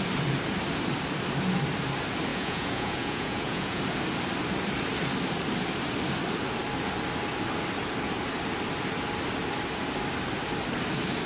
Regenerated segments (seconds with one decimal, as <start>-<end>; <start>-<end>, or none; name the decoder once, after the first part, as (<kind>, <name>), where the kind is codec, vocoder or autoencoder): 2.3-3.8 (vocoder, Vocos)